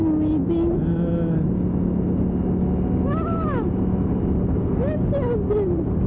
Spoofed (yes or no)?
no